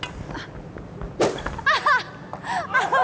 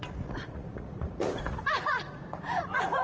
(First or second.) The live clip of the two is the first